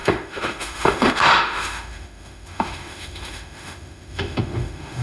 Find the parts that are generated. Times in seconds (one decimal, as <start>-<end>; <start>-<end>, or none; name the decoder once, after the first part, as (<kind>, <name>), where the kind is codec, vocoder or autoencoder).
0.0-5.0 (autoencoder, DAC-VAE)